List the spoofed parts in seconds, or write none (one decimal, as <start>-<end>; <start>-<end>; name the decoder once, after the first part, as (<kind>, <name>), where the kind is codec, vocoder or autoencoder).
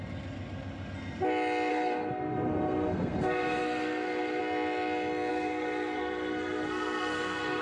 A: 1.7-4.4 (codec, SNAC); 5.3-7.6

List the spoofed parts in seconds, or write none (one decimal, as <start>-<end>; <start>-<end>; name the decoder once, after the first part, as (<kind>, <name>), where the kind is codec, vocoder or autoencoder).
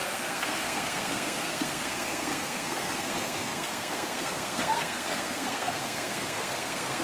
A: 0.0-7.0 (codec, SNAC)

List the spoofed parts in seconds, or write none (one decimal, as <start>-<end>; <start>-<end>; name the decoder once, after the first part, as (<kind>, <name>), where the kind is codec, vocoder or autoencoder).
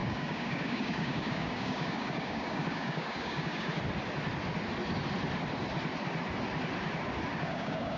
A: 0.0-3.7 (codec, DAC); 7.3-8.0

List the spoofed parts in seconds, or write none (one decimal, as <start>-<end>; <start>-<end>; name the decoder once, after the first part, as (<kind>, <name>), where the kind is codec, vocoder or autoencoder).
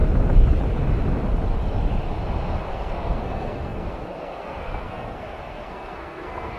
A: 2.7-6.6 (codec, SNAC)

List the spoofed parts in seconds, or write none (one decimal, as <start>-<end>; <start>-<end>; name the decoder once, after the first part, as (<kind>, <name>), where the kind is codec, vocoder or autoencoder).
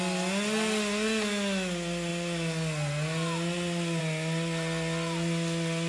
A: none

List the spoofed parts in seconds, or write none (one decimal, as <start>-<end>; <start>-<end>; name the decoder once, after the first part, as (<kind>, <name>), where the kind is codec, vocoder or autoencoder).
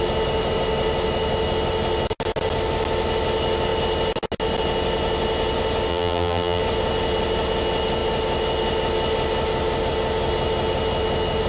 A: 5.9-6.6 (vocoder, BigVGAN v2)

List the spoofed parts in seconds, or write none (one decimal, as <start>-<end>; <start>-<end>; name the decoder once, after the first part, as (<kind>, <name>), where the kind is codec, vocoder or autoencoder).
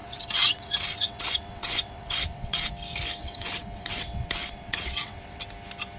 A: 0.0-2.7 (vocoder, WaveNeXt); 3.2-5.4